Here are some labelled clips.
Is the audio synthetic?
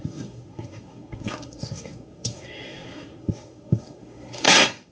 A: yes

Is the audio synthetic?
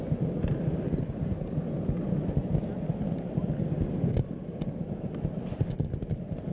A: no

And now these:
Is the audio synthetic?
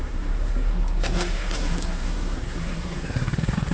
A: yes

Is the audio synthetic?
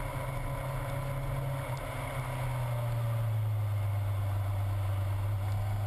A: no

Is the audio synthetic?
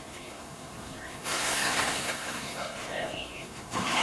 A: yes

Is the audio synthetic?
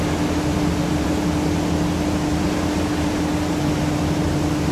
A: no